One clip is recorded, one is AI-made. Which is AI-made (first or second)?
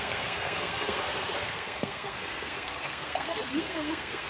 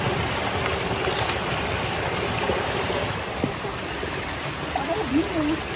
first